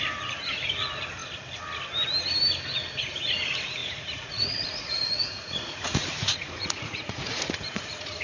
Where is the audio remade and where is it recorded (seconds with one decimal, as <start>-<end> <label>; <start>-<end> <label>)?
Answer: 0.0-3.8 recorded; 3.8-8.2 remade